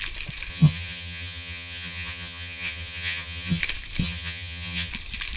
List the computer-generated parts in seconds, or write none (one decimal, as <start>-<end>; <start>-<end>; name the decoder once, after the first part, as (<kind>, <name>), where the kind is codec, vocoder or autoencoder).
0.5-3.6 (vocoder, HiFi-GAN); 4.0-4.9